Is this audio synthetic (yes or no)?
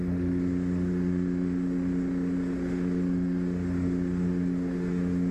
yes